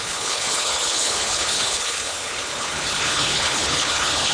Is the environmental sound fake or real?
fake